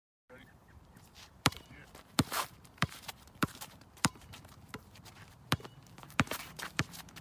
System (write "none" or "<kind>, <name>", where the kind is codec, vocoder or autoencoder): vocoder, BigVGAN v2